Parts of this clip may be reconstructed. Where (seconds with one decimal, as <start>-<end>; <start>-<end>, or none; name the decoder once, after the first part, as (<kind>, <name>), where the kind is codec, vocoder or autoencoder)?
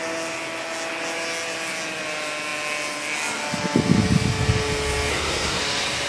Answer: 5.1-5.6 (codec, SNAC)